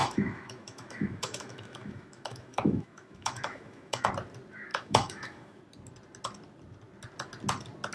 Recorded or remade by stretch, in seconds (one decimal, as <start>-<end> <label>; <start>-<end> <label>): 0.0-4.1 remade; 4.1-4.7 recorded; 4.7-5.6 remade; 5.6-7.9 recorded